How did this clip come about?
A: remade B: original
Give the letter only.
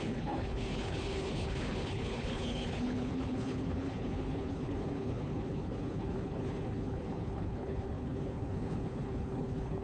A